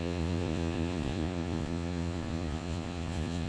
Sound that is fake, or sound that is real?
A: fake